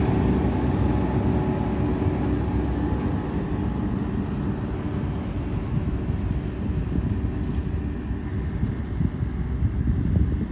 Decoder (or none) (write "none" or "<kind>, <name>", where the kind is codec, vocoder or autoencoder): none